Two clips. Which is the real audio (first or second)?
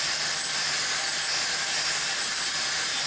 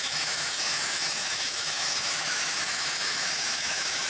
first